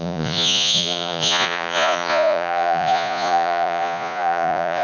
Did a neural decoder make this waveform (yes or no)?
yes